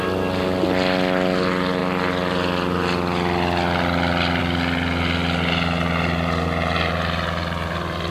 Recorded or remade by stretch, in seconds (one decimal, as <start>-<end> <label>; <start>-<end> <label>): 0.0-8.1 recorded